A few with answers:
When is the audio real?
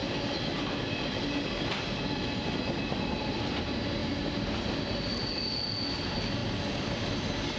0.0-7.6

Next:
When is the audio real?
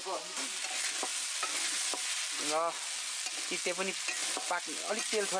0.0-5.4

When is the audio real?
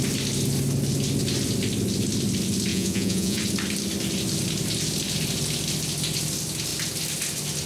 0.0-2.7; 3.4-7.7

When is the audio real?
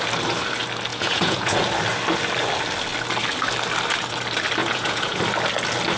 0.0-0.9; 1.6-4.6; 5.2-6.0